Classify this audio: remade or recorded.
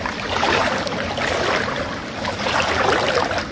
recorded